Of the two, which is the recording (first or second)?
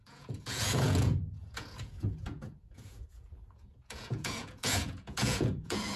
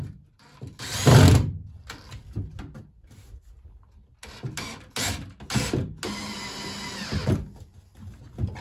second